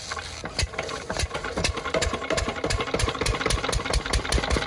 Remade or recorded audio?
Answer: recorded